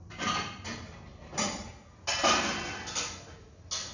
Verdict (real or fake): real